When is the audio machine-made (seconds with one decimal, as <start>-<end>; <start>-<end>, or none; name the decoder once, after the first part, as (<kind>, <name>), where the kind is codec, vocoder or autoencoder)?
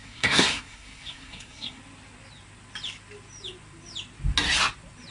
0.0-1.8 (codec, SNAC)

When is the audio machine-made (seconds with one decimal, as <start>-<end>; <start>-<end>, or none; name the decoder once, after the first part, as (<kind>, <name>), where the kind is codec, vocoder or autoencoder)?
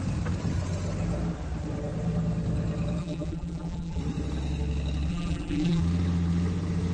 3.0-4.0 (vocoder, BigVGAN v2); 5.1-5.8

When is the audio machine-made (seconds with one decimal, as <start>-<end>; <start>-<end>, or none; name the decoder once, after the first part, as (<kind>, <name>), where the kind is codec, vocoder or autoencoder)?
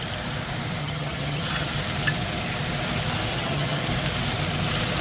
0.8-1.7 (vocoder, HiFi-GAN); 3.3-3.8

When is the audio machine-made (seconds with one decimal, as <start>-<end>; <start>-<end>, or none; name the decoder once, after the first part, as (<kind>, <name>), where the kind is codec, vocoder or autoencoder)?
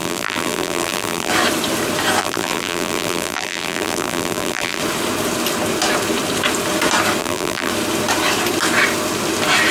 0.0-1.3 (vocoder, BigVGAN v2); 2.2-4.8; 7.2-7.7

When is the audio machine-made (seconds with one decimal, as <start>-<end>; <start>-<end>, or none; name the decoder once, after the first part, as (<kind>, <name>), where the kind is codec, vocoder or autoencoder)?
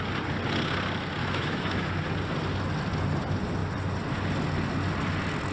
1.2-1.9 (autoencoder, DAC-VAE)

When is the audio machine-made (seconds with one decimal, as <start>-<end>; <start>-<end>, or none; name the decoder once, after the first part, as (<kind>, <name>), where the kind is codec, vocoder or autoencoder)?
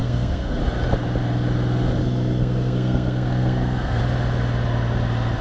0.0-0.6 (codec, SNAC); 2.0-4.0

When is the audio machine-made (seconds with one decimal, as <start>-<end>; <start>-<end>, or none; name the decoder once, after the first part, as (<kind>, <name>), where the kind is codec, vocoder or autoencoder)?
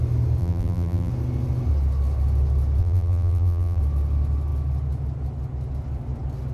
0.4-1.1 (vocoder, BigVGAN v2); 2.8-3.8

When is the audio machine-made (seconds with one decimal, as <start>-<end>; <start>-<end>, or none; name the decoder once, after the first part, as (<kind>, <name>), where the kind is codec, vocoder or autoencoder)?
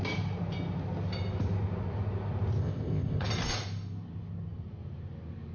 2.6-3.3 (codec, ZipCodec)